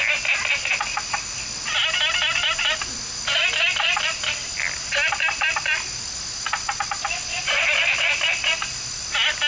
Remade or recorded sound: recorded